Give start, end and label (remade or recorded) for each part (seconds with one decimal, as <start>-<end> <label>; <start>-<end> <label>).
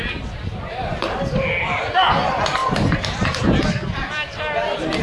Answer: 0.0-5.0 recorded